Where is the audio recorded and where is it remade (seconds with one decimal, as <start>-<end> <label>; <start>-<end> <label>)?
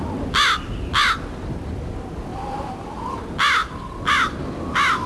0.0-2.3 recorded; 2.3-3.2 remade; 3.2-3.6 recorded; 3.6-4.6 remade; 4.6-5.1 recorded